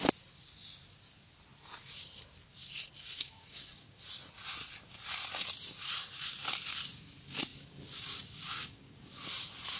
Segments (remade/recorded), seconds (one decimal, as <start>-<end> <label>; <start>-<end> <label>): 0.0-2.6 recorded; 2.6-4.0 remade; 4.0-7.5 recorded; 7.5-9.0 remade; 9.0-9.8 recorded